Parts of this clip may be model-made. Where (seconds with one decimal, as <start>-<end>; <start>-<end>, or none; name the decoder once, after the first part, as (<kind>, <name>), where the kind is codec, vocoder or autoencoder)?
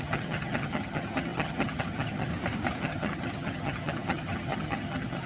0.0-2.3 (vocoder, HiFi-GAN); 2.8-5.3